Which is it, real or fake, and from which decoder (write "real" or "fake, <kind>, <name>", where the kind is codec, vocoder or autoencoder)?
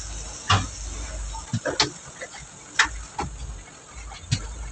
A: real